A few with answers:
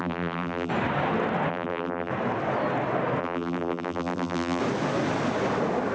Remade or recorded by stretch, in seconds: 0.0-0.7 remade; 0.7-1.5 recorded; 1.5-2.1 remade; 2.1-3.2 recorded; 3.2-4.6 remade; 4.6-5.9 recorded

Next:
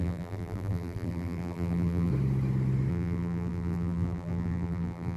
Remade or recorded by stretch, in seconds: 0.0-2.1 remade; 2.1-2.9 recorded; 2.9-5.2 remade